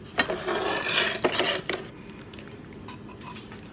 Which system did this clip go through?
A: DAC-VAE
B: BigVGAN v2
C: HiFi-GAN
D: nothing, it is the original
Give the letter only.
D